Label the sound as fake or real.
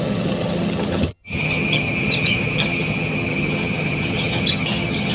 fake